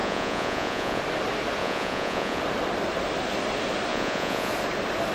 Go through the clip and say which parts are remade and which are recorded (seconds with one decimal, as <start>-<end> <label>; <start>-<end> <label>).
0.0-1.0 remade; 1.0-1.6 recorded; 1.6-2.4 remade; 2.4-3.9 recorded; 3.9-4.5 remade; 4.5-5.1 recorded